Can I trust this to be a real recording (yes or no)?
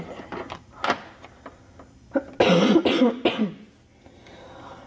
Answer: yes